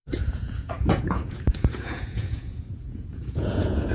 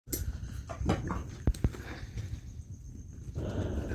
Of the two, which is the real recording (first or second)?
second